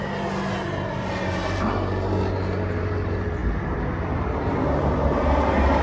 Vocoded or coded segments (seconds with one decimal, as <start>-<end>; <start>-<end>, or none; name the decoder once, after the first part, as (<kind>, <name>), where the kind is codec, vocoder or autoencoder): none